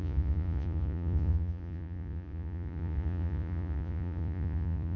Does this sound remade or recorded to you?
remade